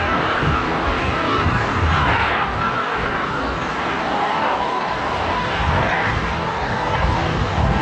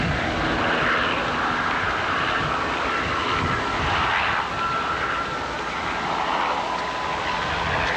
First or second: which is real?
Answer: second